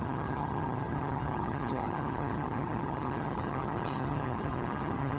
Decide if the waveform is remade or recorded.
remade